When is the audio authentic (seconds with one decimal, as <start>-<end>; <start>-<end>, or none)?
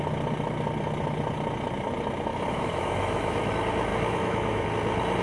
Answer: 0.0-2.3; 3.5-3.9; 4.7-5.2